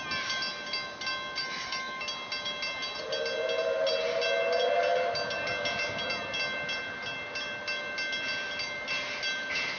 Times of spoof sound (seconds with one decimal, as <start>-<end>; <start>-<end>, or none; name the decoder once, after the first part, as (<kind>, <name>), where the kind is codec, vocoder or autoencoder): 1.4-2.0 (autoencoder, DAC-VAE)